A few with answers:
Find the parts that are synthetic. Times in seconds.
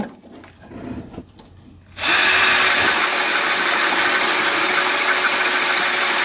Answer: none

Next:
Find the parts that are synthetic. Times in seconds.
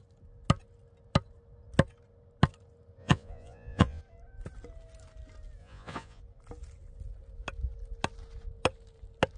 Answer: 3.0-4.0 (vocoder, Vocos); 5.6-6.2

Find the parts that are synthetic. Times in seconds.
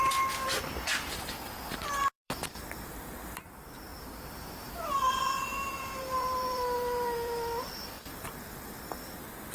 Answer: 0.0-9.5 (vocoder, BigVGAN v2)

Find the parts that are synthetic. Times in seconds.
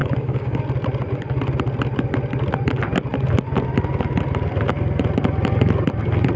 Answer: 0.0-0.6 (codec, DAC)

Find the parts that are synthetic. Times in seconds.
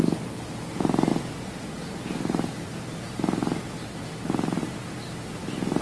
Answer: none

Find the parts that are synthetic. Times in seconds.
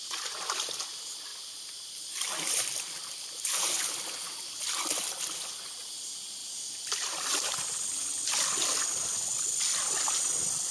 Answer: 1.3-2.0 (vocoder, BigVGAN v2); 6.4-7.8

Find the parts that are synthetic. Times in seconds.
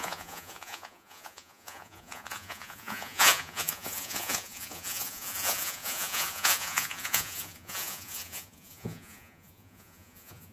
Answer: 0.0-10.5 (vocoder, Vocos)